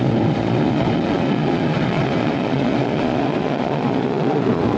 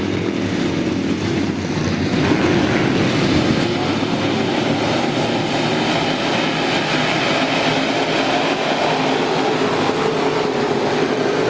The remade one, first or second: first